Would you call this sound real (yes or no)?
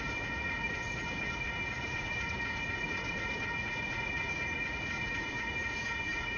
no